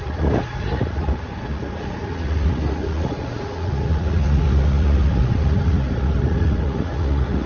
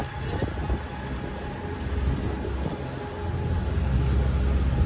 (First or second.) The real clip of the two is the second